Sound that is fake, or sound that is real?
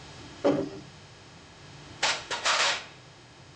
fake